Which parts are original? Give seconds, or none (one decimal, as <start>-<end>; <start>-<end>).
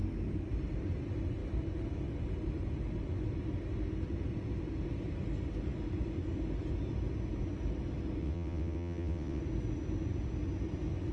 0.0-8.2; 9.4-11.1